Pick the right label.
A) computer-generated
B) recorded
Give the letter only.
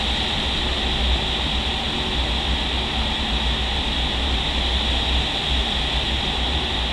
B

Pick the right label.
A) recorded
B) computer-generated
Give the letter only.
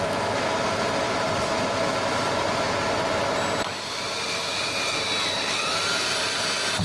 A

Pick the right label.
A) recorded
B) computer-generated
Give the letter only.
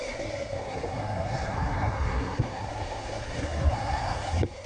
B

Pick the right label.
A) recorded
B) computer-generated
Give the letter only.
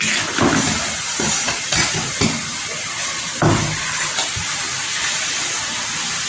A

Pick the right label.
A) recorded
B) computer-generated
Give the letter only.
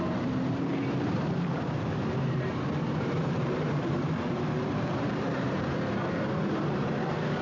B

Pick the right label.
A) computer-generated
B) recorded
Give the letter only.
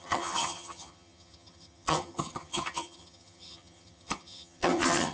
A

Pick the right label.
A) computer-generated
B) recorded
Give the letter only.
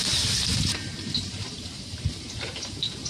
A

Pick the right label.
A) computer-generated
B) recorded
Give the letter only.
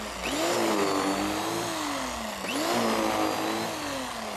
B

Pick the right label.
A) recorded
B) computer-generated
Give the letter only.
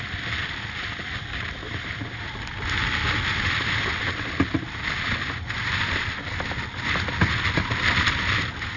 A